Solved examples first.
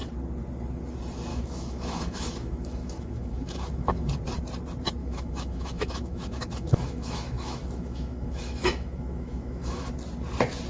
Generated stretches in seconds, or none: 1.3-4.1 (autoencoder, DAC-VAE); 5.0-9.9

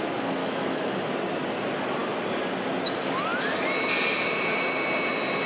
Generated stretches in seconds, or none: 0.4-1.1 (autoencoder, DAC-VAE)

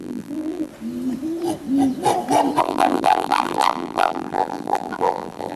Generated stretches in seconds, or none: 0.0-0.7 (vocoder, BigVGAN v2); 2.6-5.6

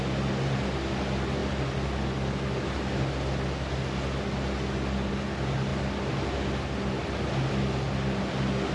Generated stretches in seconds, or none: none

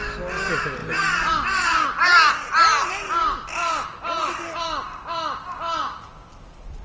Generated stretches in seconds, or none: none

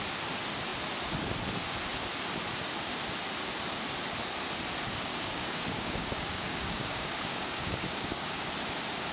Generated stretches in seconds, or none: 5.1-8.5 (codec, DAC)